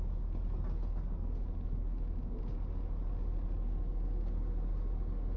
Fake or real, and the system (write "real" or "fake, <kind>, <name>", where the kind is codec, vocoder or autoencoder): real